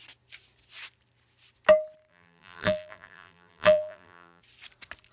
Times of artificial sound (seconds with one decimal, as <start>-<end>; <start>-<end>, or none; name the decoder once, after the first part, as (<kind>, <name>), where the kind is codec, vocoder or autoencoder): 2.1-4.4 (vocoder, BigVGAN v2)